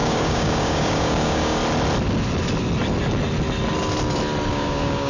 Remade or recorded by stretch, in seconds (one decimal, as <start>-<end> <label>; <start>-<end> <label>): 0.0-1.6 remade; 1.6-4.5 recorded; 4.5-5.1 remade